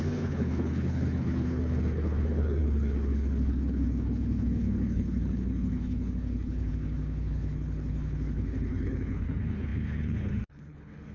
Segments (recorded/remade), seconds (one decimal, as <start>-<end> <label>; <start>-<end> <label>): 0.0-11.1 remade